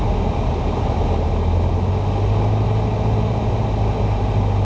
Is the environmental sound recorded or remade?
recorded